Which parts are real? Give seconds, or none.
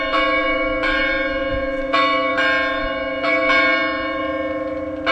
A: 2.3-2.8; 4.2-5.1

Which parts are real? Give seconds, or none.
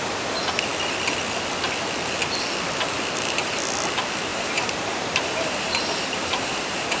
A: 0.0-4.3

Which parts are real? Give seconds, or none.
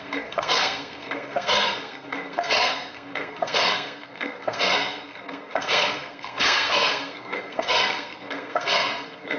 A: none